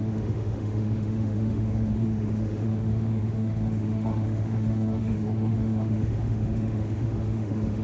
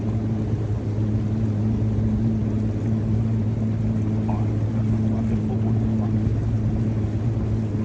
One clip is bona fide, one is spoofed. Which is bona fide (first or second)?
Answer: second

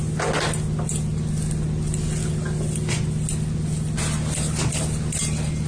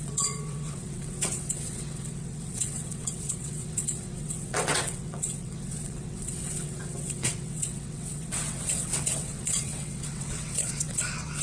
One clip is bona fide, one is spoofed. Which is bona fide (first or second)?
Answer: first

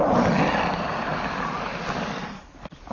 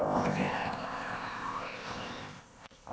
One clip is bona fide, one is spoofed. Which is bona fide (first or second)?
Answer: first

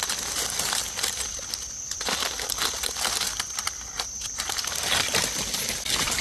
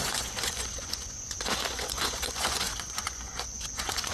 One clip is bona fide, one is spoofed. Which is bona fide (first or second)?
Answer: first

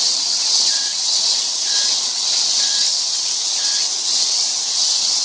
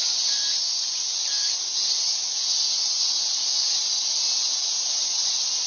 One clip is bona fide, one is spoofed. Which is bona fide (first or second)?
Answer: second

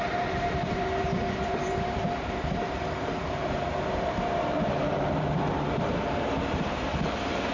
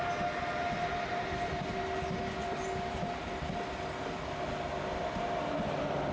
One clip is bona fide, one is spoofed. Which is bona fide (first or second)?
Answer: second